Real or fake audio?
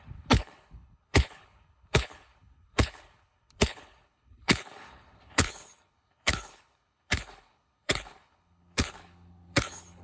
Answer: fake